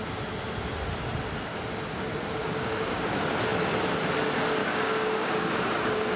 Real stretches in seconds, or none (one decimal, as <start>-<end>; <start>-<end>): 0.0-2.4; 3.0-4.6; 5.5-6.2